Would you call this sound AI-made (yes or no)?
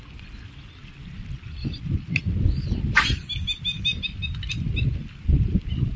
no